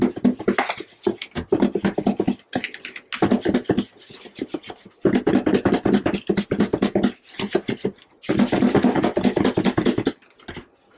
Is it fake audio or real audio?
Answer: real